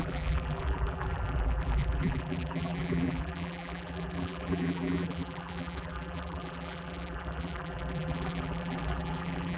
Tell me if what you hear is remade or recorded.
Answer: remade